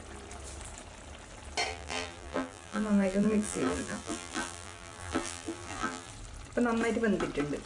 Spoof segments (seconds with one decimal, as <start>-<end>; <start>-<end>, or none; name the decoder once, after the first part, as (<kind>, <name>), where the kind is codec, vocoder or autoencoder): 1.7-6.1 (vocoder, BigVGAN v2)